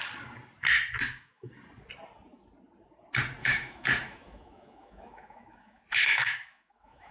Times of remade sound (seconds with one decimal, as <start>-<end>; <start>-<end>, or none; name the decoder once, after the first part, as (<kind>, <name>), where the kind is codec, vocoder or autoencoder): 1.0-1.5 (autoencoder, DAC-VAE); 3.4-7.1